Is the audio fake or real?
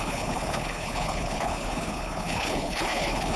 fake